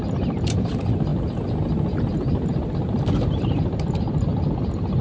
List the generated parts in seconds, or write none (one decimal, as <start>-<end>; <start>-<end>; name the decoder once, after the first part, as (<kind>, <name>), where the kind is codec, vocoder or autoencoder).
none